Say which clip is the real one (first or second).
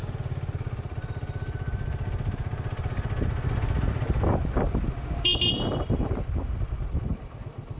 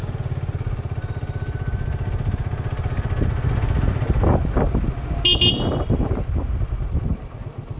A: second